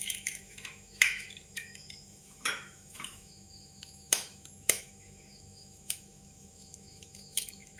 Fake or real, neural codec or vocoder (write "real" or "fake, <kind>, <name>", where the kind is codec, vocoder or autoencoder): fake, autoencoder, DAC-VAE